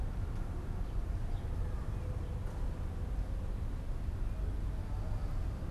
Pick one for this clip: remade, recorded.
recorded